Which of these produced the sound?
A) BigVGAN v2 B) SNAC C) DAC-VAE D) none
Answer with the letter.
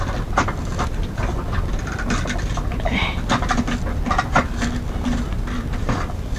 D